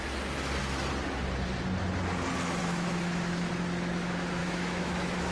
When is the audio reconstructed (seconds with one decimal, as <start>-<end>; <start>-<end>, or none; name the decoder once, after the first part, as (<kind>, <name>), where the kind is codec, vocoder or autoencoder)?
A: 2.6-3.5 (autoencoder, DAC-VAE); 4.4-5.3